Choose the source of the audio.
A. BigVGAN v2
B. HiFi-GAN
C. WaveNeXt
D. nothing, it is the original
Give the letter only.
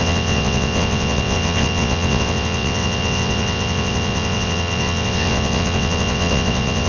C